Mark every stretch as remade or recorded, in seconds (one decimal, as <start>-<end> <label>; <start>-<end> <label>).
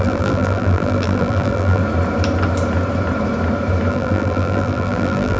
0.0-1.8 remade; 1.8-3.9 recorded; 3.9-5.4 remade